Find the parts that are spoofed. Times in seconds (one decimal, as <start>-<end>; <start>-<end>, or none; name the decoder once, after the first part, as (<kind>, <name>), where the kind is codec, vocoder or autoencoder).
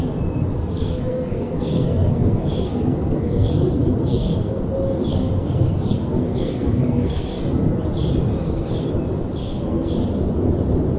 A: 0.6-4.6 (codec, SNAC); 5.1-7.4; 8.3-8.9; 9.4-9.9